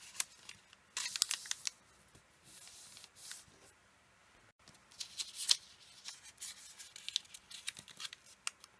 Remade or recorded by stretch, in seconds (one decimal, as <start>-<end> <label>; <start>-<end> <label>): 0.0-8.8 recorded